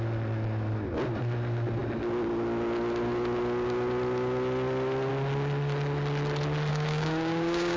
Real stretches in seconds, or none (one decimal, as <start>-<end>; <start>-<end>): 0.0-6.7